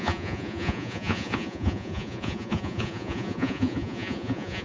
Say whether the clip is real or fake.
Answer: fake